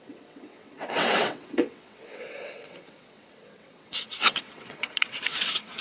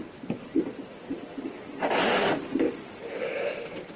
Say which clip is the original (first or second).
second